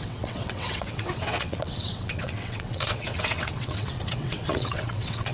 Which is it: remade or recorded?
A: remade